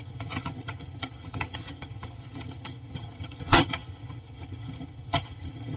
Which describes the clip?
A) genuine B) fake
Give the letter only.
B